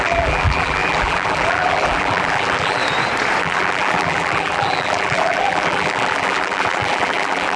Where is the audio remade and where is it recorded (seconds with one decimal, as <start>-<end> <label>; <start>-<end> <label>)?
0.0-2.8 remade; 2.8-3.4 recorded; 3.4-7.6 remade